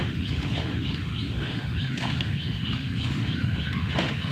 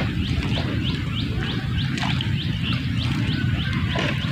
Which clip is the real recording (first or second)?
second